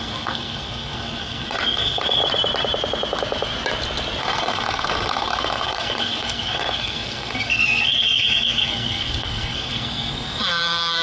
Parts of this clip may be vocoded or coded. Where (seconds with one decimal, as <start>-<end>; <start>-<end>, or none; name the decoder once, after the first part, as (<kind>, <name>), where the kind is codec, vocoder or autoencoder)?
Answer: 0.0-2.2 (codec, SNAC); 4.2-11.0